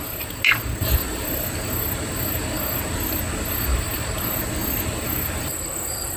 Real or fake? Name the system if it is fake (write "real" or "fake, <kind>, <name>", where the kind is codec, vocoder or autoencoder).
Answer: real